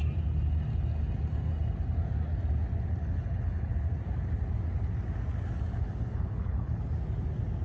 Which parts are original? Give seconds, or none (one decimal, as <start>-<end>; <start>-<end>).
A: 0.0-3.0; 3.7-6.1; 6.8-7.6